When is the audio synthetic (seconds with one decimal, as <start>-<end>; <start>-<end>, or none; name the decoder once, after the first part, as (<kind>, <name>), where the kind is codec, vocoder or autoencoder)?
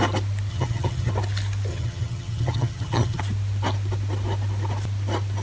0.5-1.1 (vocoder, HiFi-GAN); 1.7-3.2